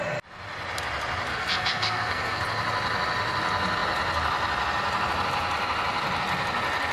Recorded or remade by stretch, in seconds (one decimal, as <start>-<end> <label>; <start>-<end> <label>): 0.0-1.3 recorded; 1.3-2.4 remade; 2.4-6.9 recorded